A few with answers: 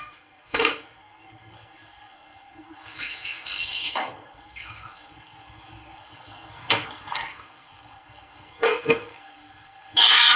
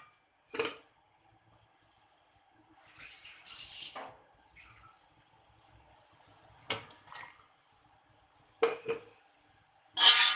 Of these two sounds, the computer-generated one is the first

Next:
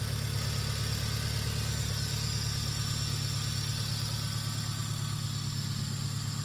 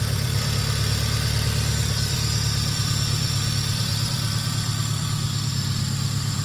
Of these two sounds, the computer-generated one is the second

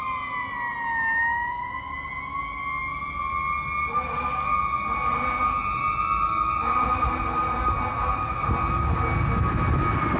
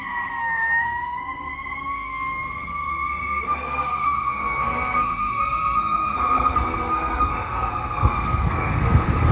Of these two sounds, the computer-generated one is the second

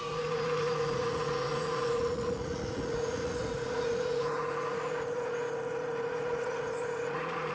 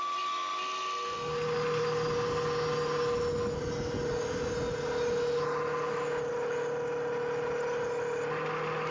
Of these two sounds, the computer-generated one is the first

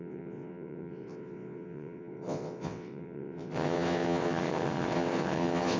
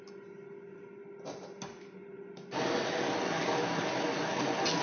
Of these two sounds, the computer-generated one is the first